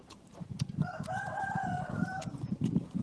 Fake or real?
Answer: fake